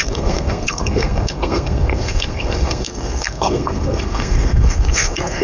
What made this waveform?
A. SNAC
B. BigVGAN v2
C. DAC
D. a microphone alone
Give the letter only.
A